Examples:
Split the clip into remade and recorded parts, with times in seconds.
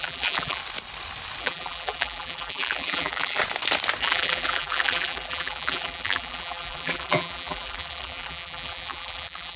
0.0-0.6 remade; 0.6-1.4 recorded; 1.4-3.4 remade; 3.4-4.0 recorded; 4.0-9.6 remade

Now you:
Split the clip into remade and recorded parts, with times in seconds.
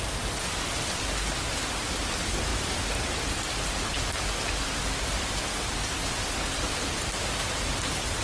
0.0-8.2 recorded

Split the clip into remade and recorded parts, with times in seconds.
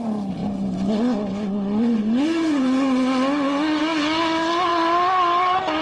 0.0-5.8 recorded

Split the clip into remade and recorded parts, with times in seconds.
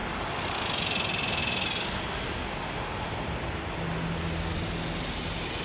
0.0-5.6 recorded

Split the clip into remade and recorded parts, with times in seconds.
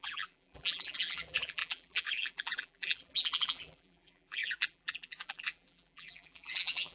0.0-6.9 remade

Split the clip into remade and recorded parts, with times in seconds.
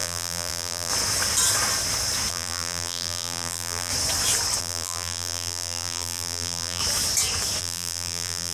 0.0-0.9 remade; 0.9-2.3 recorded; 2.3-3.9 remade; 3.9-4.6 recorded; 4.6-6.8 remade; 6.8-7.6 recorded; 7.6-8.5 remade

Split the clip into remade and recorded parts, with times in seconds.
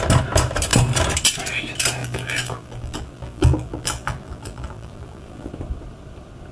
0.0-2.0 recorded; 2.0-5.5 remade; 5.5-6.5 recorded